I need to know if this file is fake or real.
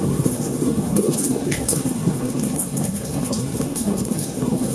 fake